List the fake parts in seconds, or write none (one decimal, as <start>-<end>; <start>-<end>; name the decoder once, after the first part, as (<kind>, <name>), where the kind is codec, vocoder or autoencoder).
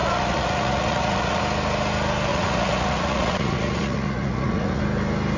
0.0-1.4 (vocoder, Vocos); 2.3-4.8